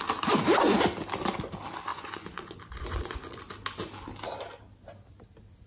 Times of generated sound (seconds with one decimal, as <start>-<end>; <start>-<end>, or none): 1.9-3.4